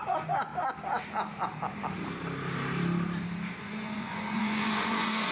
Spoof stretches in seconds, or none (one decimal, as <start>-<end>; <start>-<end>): 0.0-0.5; 3.6-5.3